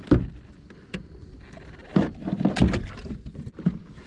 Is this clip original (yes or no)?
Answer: yes